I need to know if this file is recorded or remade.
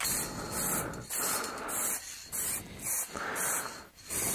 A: recorded